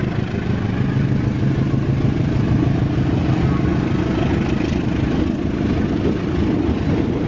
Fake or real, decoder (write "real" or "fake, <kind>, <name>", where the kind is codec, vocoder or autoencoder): real